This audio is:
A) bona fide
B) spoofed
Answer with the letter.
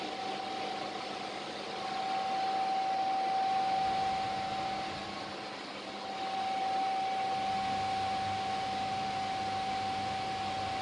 A